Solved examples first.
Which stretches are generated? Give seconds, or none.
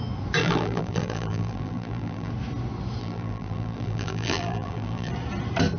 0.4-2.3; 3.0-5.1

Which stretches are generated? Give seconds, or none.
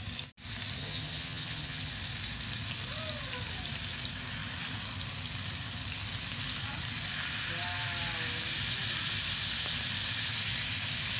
0.8-1.9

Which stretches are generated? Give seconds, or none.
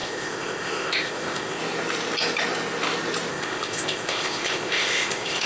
0.0-1.6; 3.3-5.5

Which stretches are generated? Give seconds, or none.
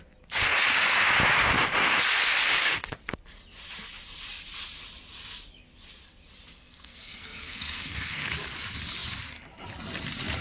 6.5-8.3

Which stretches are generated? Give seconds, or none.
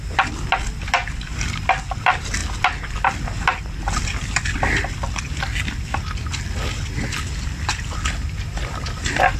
none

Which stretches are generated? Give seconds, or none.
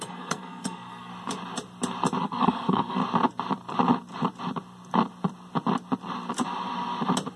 0.0-1.1; 2.2-3.0